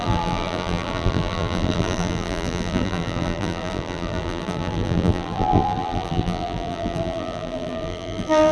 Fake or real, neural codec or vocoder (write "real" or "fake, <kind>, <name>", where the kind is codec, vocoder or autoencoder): fake, vocoder, BigVGAN v2